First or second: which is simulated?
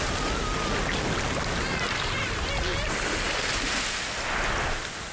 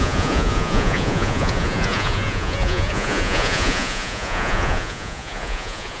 second